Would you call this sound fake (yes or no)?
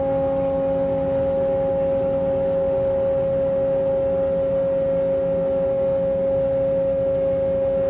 no